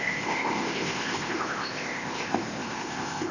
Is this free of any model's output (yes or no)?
no